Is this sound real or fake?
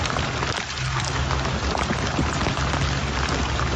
real